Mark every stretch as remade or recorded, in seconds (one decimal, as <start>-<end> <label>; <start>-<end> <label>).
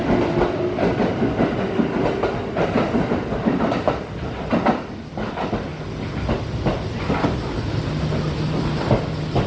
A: 0.0-9.5 recorded